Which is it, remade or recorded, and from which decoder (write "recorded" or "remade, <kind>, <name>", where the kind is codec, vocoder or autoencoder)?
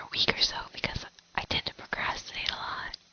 remade, vocoder, BigVGAN v2